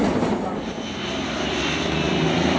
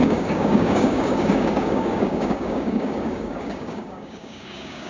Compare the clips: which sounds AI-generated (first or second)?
second